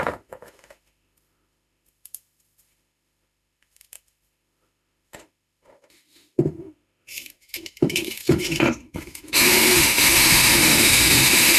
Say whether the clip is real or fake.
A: fake